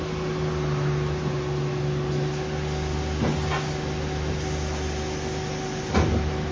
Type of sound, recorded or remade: recorded